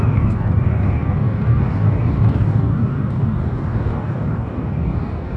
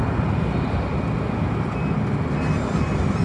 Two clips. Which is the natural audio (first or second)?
second